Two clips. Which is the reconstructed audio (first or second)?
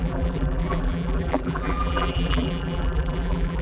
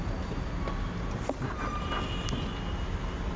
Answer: first